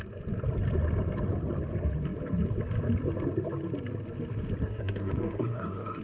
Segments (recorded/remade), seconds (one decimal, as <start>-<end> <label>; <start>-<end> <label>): 0.0-4.6 recorded; 4.6-6.0 remade